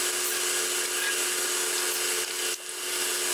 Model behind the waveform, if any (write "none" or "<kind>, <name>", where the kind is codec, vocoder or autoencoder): none